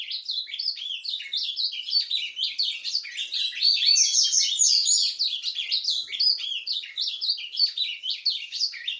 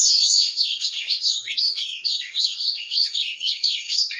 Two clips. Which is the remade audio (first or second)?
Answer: second